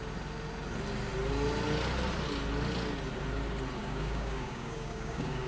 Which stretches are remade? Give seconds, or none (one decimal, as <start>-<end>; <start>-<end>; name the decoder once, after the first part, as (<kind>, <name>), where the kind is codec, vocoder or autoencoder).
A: 3.8-5.5 (codec, DAC)